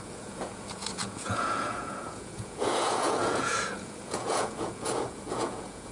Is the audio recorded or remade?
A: remade